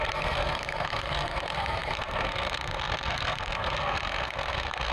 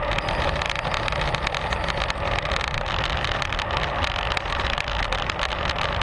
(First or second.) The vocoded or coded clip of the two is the first